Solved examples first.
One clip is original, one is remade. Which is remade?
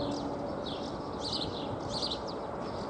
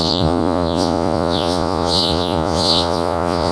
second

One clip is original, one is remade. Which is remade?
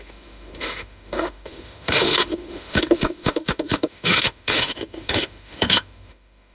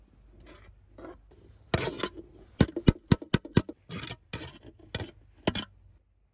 first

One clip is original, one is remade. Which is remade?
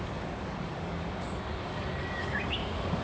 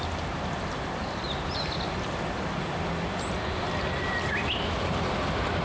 first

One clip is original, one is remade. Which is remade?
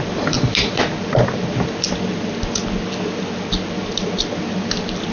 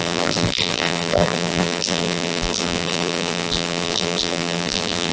second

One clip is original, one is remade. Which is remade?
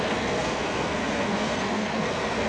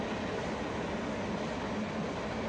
first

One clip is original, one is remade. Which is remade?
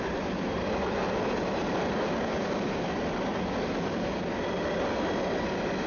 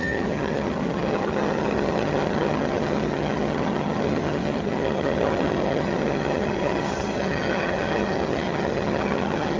second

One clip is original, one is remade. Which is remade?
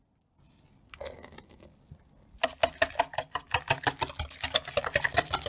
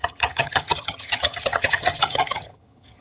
second